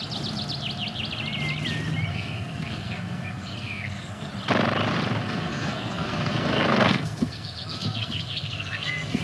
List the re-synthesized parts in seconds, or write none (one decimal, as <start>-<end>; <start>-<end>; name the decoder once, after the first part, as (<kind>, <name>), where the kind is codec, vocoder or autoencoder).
2.1-4.3 (codec, SNAC); 5.2-9.2